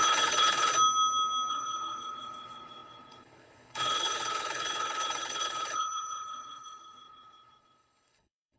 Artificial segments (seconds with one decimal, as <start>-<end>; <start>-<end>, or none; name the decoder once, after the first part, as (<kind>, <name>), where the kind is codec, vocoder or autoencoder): 0.0-0.7 (codec, HILCodec); 1.5-8.6